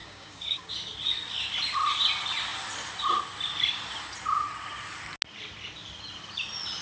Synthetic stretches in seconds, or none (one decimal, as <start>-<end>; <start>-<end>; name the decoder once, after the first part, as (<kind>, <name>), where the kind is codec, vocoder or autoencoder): 0.0-0.7 (codec, DAC)